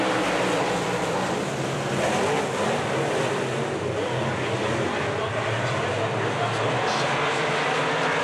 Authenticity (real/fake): real